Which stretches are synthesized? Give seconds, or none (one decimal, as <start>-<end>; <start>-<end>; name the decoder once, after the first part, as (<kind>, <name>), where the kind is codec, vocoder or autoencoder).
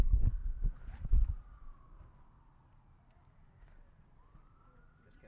0.4-3.6 (vocoder, BigVGAN v2)